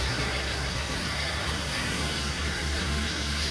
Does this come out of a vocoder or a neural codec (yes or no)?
yes